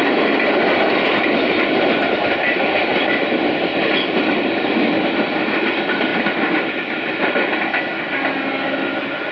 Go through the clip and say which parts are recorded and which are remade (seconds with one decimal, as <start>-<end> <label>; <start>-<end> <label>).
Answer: 0.0-9.3 recorded